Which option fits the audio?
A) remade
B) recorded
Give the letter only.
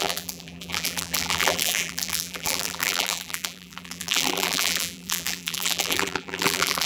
A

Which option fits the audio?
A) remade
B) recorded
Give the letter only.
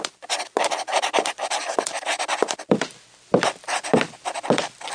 B